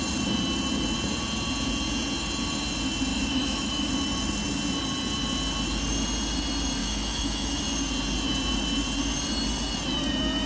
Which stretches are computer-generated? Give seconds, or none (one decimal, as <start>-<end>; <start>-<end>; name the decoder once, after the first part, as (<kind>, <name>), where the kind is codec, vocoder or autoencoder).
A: 3.1-3.9 (autoencoder, DAC-VAE); 6.8-7.6